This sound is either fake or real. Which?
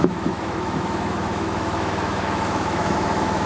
fake